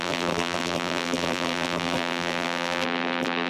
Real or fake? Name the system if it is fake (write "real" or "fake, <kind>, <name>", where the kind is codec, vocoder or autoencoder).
fake, vocoder, BigVGAN v2